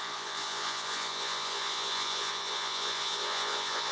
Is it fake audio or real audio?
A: fake